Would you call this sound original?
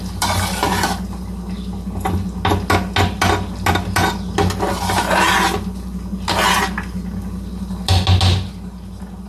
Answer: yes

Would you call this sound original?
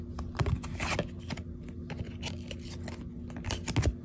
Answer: yes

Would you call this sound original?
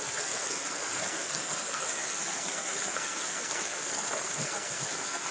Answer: no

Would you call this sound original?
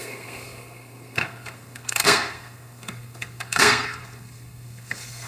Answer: no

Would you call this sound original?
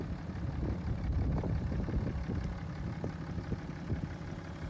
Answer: yes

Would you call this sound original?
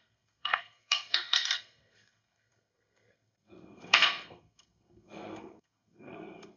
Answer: no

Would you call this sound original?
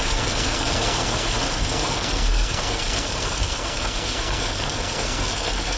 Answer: no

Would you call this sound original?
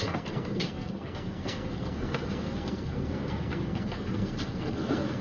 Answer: no